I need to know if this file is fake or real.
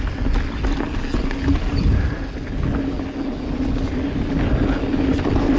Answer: real